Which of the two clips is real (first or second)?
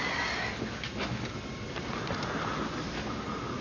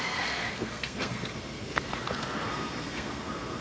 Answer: first